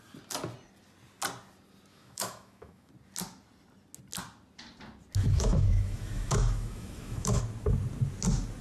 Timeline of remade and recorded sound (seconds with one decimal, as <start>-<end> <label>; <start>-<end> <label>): 0.0-1.9 recorded; 1.9-2.9 remade; 2.9-5.2 recorded; 5.2-7.4 remade; 7.4-8.6 recorded